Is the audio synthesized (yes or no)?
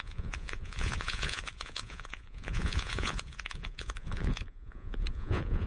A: yes